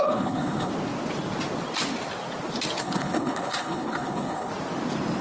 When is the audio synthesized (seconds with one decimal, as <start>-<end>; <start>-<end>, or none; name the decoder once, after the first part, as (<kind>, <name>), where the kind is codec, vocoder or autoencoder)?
0.0-0.7 (codec, HILCodec); 2.8-4.5